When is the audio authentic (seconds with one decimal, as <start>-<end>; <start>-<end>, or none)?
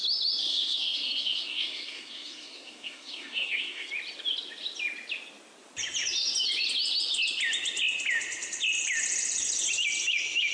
0.0-0.4; 3.9-10.5